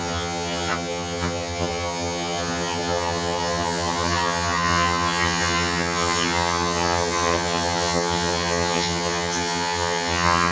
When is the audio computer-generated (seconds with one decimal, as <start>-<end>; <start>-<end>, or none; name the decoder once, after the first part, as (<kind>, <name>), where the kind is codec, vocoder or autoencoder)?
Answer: 0.0-10.5 (vocoder, HiFi-GAN)